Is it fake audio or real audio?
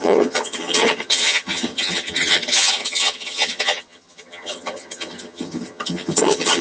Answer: fake